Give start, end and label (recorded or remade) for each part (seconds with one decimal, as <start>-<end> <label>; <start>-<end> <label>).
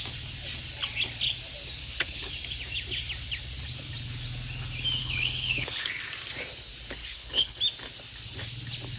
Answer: 0.0-1.8 recorded; 1.8-2.3 remade; 2.3-5.0 recorded; 5.0-5.9 remade; 5.9-7.0 recorded; 7.0-7.6 remade; 7.6-9.0 recorded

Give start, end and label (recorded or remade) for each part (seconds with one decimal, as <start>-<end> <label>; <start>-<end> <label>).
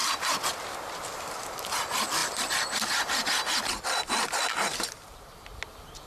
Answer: 0.0-6.1 recorded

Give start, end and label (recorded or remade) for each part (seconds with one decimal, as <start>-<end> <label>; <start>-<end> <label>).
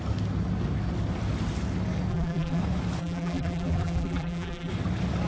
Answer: 0.0-2.1 recorded; 2.1-2.6 remade; 2.6-3.0 recorded; 3.0-4.7 remade; 4.7-5.3 recorded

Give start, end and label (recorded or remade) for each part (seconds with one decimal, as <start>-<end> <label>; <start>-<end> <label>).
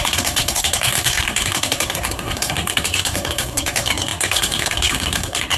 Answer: 0.0-5.6 remade